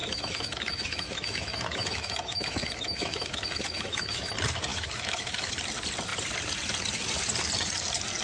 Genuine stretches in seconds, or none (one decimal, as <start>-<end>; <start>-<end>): 4.3-4.7; 5.5-8.2